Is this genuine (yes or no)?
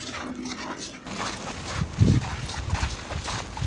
yes